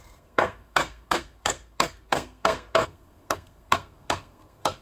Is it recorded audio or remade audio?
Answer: remade